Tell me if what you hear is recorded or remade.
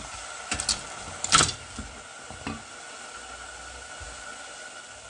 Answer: recorded